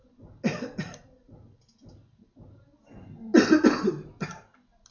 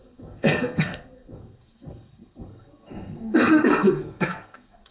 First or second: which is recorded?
first